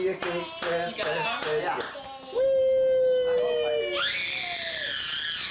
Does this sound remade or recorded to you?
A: recorded